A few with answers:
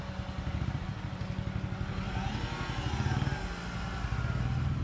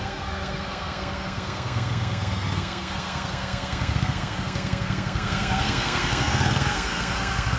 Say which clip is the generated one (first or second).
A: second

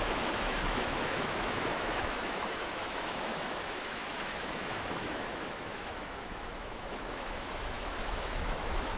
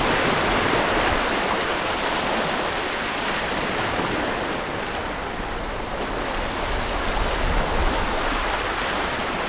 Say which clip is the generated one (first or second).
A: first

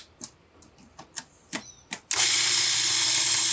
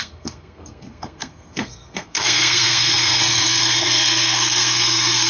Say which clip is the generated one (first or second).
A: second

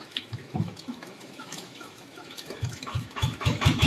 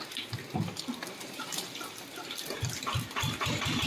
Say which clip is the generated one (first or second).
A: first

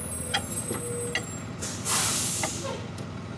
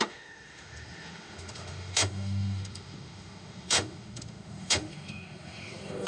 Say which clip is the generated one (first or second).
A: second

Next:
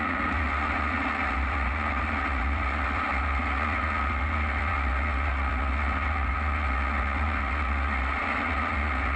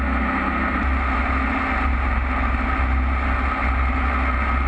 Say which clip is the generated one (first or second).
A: first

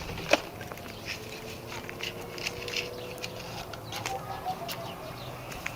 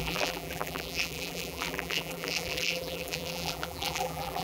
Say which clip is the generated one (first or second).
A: second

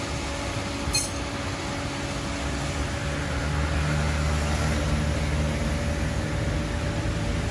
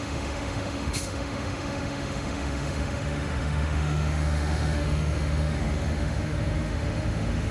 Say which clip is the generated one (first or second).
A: second